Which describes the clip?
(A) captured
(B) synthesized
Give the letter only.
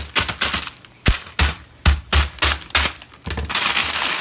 A